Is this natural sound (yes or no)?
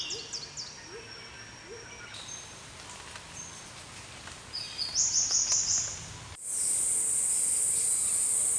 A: yes